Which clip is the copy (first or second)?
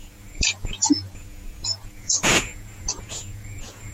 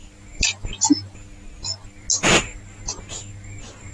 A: first